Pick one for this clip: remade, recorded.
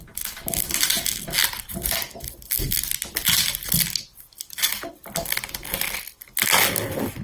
recorded